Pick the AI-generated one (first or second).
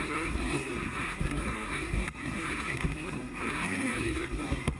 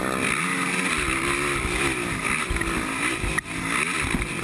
first